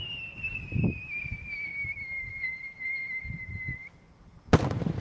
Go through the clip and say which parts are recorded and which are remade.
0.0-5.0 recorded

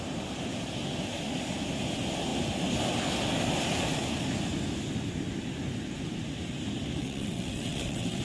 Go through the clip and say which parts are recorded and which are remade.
0.0-7.0 recorded; 7.0-8.2 remade

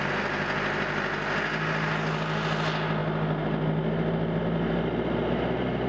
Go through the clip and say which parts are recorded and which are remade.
0.0-5.9 recorded

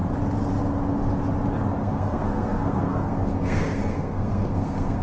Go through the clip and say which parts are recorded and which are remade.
0.0-1.8 recorded; 1.8-5.0 remade

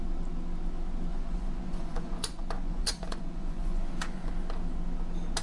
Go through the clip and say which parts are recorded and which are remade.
0.0-1.1 recorded; 1.1-4.3 remade; 4.3-5.4 recorded

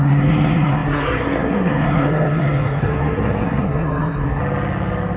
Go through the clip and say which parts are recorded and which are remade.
0.0-4.4 remade; 4.4-5.2 recorded